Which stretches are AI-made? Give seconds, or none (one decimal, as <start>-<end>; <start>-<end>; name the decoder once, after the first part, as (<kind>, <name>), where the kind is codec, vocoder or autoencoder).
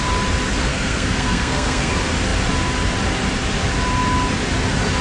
0.7-1.9 (codec, SNAC)